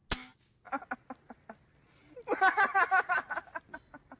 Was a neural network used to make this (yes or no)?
no